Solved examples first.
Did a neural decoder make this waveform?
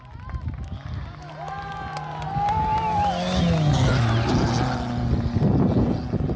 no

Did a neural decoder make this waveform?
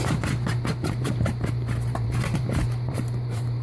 yes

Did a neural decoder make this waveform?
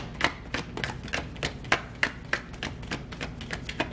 no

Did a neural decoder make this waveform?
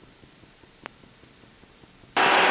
no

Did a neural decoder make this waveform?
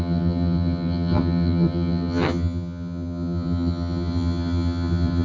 yes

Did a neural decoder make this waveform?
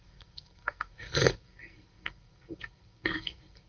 yes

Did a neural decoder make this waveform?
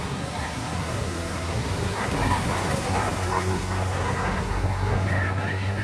yes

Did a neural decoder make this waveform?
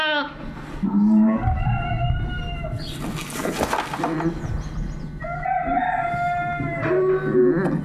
no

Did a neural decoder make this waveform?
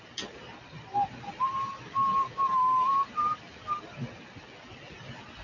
no